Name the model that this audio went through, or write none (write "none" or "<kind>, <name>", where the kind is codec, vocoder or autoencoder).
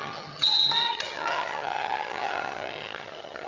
vocoder, HiFi-GAN